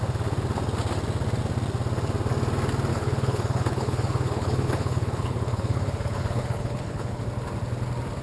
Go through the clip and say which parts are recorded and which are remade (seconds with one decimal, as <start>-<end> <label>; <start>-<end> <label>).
0.0-2.9 recorded; 2.9-7.2 remade; 7.2-8.2 recorded